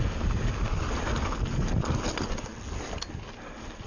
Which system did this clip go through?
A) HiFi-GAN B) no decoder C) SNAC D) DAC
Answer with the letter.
B